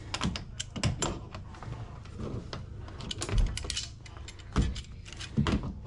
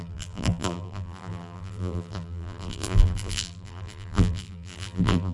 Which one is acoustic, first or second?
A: first